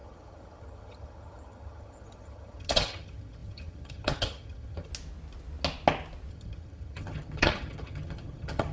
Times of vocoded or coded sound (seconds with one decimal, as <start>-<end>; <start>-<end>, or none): 0.0-4.9; 6.3-8.7